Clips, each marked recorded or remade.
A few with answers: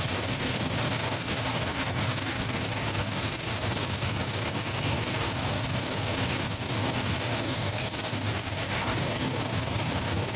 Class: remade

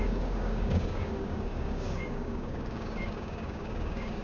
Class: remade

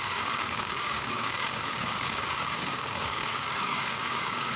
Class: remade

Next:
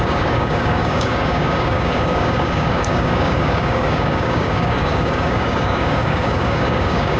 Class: remade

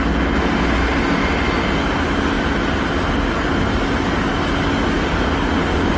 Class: recorded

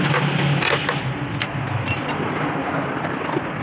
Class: recorded